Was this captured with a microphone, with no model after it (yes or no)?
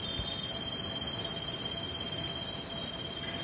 yes